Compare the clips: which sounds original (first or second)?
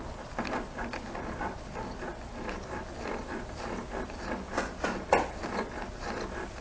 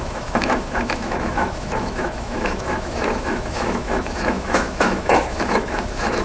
first